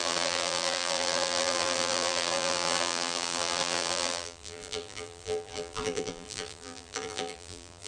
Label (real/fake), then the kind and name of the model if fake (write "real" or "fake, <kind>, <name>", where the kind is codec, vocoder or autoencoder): fake, vocoder, BigVGAN v2